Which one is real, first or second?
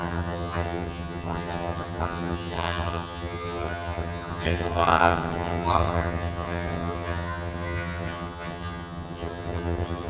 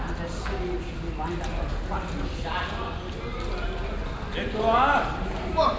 second